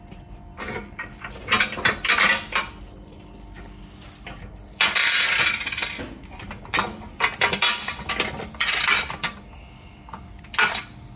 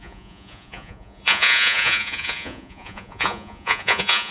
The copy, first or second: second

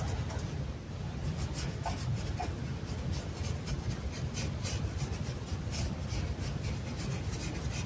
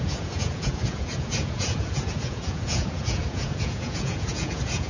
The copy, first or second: second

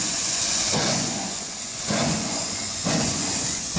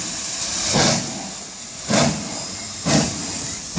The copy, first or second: first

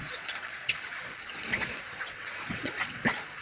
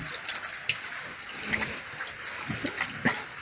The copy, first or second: first